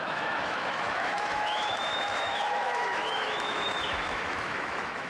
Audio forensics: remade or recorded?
remade